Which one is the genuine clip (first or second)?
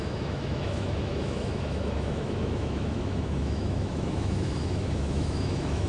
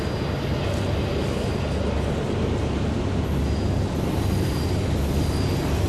second